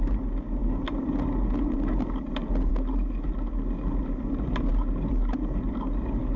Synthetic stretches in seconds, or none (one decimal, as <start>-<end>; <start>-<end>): none